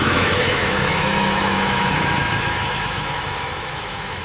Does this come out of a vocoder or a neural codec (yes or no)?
yes